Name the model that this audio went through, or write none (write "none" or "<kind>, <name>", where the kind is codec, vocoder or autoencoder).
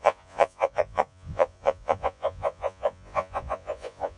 vocoder, Vocos